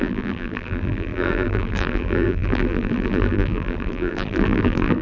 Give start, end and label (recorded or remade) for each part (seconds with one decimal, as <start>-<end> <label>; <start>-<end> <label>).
0.0-5.0 remade